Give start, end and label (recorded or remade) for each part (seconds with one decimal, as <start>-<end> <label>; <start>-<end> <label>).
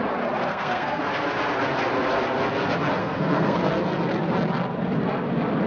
0.0-0.5 recorded; 0.5-1.0 remade; 1.0-3.0 recorded; 3.0-3.7 remade; 3.7-5.7 recorded